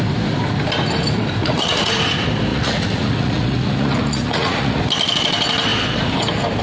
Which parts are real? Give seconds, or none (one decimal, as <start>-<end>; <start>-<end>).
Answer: 0.0-1.4; 2.0-2.5; 4.8-6.6